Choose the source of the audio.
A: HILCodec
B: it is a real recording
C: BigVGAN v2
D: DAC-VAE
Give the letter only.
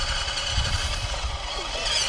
B